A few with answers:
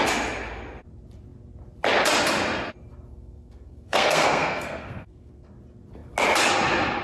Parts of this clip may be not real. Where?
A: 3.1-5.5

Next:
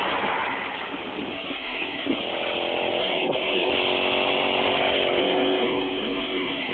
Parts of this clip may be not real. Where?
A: 1.3-2.2; 3.0-3.7; 5.2-6.7